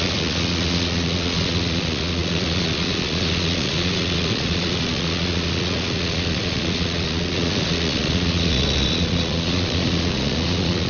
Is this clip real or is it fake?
fake